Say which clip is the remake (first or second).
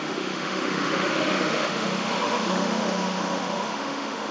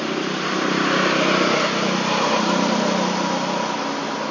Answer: first